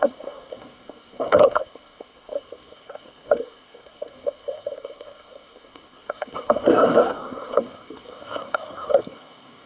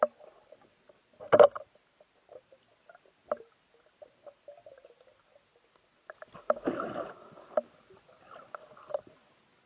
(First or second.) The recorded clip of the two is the second